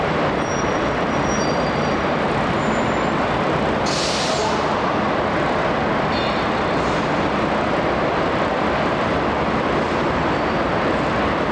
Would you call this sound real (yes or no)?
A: yes